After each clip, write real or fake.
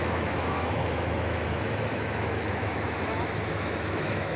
fake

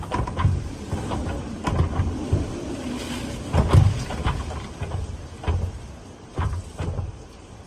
real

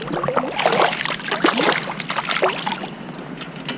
real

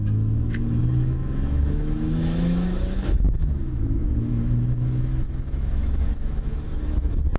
fake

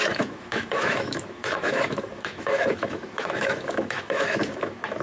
fake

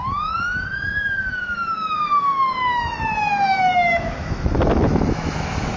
fake